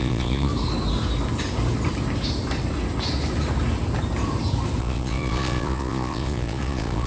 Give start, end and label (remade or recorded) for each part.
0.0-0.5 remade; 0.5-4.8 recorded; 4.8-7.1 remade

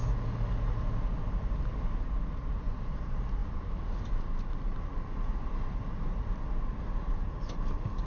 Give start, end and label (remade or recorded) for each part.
0.0-8.1 recorded